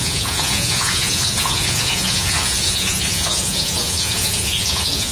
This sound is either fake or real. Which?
fake